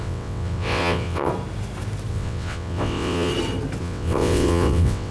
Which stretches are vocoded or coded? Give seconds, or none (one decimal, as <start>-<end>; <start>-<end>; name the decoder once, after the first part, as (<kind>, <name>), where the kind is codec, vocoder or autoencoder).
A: 0.0-1.3 (vocoder, WaveNeXt); 2.1-3.3; 3.8-5.1

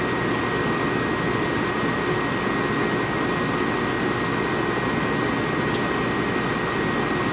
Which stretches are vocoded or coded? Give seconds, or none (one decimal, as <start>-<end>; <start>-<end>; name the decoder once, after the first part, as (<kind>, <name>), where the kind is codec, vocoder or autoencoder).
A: none

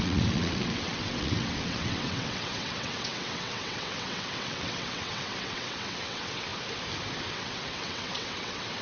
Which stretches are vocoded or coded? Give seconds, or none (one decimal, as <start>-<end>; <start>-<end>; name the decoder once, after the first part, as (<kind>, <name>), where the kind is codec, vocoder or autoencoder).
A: 0.0-6.5 (vocoder, WaveNeXt); 7.3-8.8

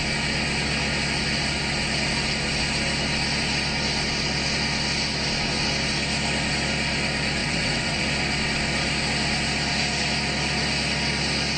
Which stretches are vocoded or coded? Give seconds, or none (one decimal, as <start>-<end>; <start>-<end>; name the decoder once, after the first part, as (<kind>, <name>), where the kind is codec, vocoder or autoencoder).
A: 7.4-8.0 (vocoder, WaveNeXt)

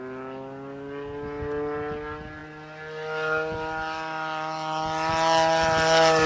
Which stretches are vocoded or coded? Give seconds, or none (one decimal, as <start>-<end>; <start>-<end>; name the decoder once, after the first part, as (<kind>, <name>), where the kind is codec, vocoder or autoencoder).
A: none